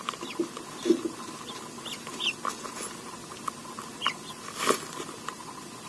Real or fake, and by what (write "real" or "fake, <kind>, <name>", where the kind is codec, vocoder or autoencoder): real